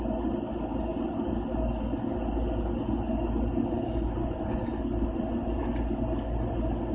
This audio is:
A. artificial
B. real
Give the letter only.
B